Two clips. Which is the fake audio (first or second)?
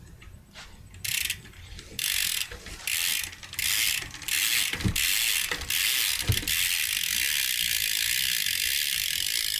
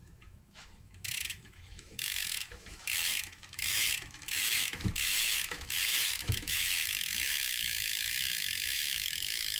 second